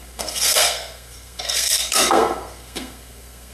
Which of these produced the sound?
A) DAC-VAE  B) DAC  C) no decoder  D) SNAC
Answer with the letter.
D